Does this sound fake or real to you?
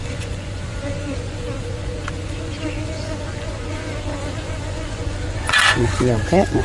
fake